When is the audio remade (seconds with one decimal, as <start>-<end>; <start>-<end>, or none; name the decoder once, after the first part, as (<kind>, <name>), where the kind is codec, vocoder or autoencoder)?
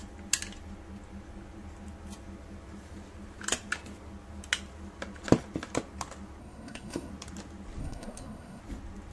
6.4-7.1 (codec, SNAC); 7.8-8.6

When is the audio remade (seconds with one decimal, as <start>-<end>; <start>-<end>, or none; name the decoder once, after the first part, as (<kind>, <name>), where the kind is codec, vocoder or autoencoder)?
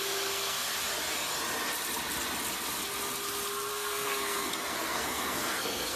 0.0-0.7 (codec, SNAC); 3.7-6.0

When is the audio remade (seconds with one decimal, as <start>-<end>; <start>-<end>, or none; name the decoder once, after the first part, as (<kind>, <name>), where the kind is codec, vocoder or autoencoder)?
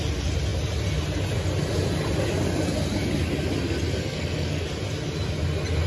4.0-4.6 (codec, SNAC)